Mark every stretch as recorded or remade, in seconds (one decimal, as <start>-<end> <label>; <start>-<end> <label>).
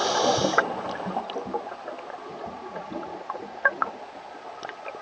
0.0-2.3 recorded; 2.3-4.0 remade; 4.0-5.0 recorded